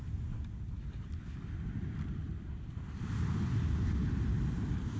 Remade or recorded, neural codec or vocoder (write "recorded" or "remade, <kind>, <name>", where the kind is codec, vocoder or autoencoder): recorded